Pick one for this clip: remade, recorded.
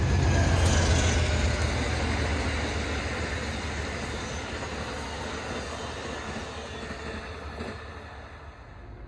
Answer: recorded